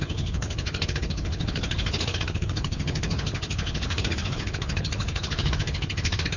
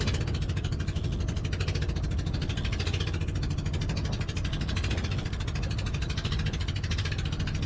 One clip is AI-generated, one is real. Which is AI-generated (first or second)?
first